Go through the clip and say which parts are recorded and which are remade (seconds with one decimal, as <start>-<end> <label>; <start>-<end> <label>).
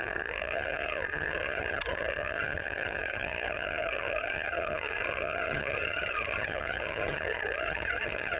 0.0-8.4 remade